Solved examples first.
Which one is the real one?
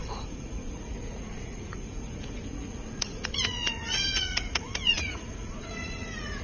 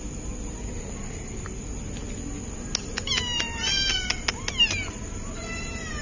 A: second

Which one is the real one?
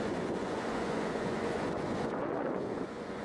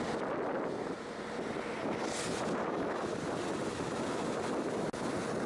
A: second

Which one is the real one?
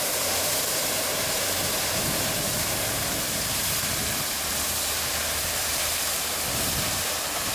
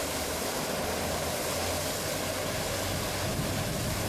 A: second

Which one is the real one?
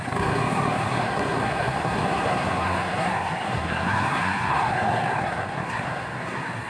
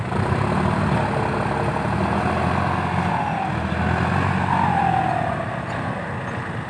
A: second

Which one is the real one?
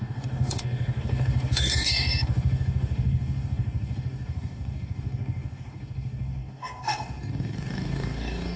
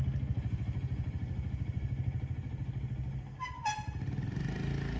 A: second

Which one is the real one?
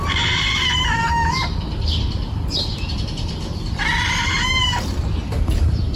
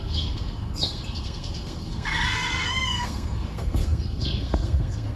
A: first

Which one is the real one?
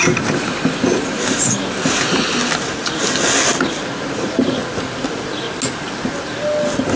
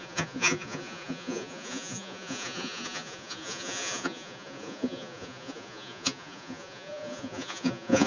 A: first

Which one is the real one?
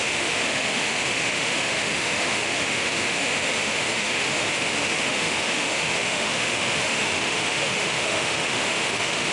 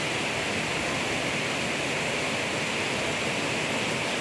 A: second